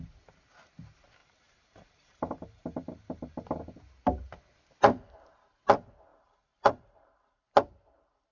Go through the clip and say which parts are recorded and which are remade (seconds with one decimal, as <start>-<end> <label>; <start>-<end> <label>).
0.0-1.2 recorded; 1.2-3.6 remade; 3.6-6.1 recorded; 6.1-7.4 remade; 7.4-8.3 recorded